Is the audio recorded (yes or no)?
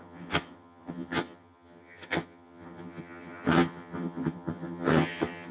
no